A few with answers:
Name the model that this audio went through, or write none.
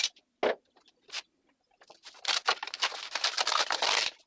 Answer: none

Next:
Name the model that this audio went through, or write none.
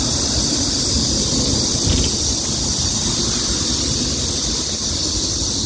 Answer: none